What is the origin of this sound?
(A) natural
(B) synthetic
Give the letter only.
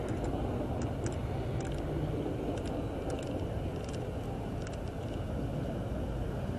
A